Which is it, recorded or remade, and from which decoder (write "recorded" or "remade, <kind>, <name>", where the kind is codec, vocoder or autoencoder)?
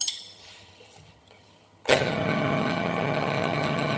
remade, vocoder, HiFi-GAN